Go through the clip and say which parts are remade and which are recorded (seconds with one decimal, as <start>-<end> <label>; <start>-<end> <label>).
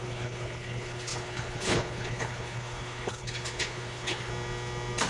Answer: 0.0-4.3 remade; 4.3-5.1 recorded